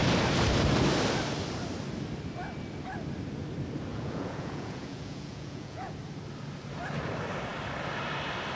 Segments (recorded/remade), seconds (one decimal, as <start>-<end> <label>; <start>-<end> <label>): 0.0-3.9 recorded; 3.9-5.9 remade; 5.9-8.6 recorded